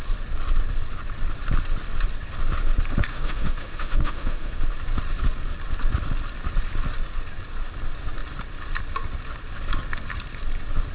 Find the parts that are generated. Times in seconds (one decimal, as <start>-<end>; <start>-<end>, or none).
3.1-4.6